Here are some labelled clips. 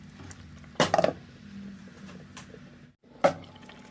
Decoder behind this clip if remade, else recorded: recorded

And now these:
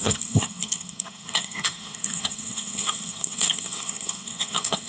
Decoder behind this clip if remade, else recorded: remade, codec, SNAC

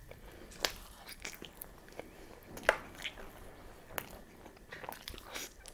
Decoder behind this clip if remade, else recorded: recorded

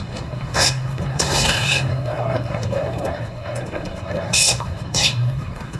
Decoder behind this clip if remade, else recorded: remade, codec, SNAC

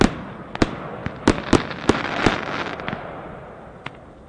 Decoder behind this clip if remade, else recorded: recorded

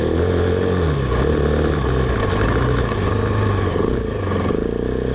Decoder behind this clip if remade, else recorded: recorded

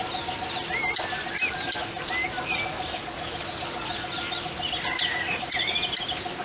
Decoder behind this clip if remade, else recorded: recorded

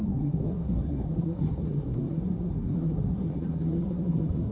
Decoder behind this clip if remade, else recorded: remade, codec, SNAC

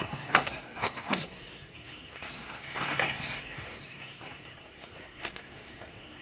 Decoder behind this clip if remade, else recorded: remade, codec, SNAC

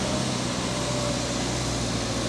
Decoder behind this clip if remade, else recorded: recorded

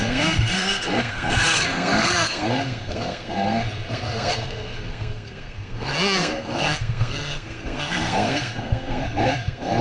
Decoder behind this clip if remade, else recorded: remade, codec, SNAC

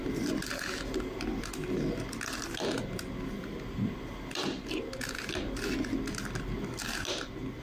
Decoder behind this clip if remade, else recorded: recorded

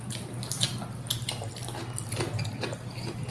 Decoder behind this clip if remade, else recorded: recorded